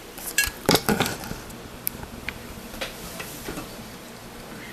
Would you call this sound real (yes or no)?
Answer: no